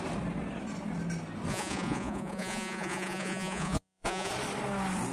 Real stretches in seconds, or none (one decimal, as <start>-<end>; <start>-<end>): 0.0-1.5; 4.3-5.1